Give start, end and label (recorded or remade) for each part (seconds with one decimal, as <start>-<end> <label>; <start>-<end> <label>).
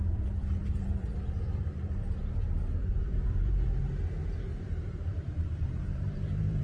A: 0.0-0.6 recorded; 0.6-3.8 remade; 3.8-4.5 recorded; 4.5-6.6 remade